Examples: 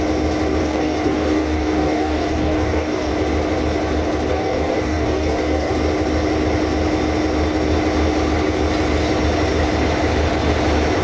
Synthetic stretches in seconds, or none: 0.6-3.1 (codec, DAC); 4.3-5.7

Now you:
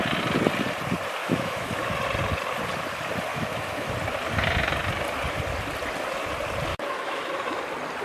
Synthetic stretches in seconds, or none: 1.2-1.9 (autoencoder, DAC-VAE); 3.3-3.9; 6.7-7.6

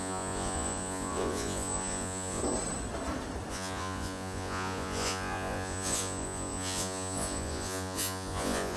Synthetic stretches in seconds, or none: 0.0-2.4 (vocoder, Vocos); 3.5-8.8

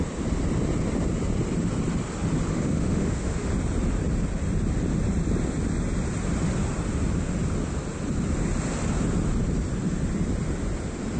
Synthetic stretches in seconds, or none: 2.5-3.5 (autoencoder, DAC-VAE)

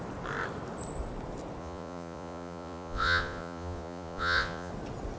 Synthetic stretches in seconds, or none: 1.6-4.7 (vocoder, Vocos)